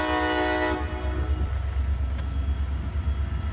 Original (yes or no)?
yes